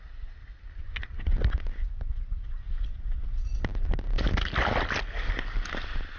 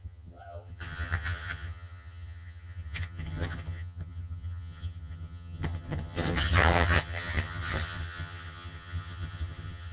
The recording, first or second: first